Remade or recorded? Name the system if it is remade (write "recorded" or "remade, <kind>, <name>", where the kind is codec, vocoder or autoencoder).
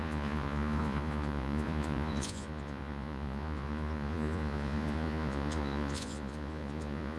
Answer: remade, vocoder, Vocos